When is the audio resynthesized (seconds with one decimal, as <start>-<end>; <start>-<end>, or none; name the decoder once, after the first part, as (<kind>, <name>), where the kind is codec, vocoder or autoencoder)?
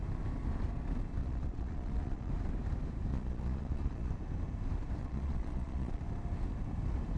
1.2-2.3 (vocoder, Vocos); 3.1-4.1; 5.0-6.0